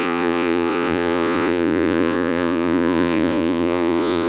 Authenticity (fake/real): fake